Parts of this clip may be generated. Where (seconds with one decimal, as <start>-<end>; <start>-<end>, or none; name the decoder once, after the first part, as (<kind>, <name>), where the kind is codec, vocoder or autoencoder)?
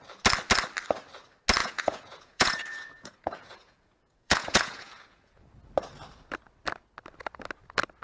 1.6-5.4 (vocoder, Vocos)